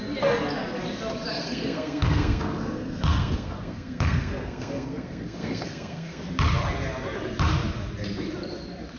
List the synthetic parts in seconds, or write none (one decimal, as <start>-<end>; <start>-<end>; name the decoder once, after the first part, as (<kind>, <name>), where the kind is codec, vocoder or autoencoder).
1.3-6.2 (codec, SNAC)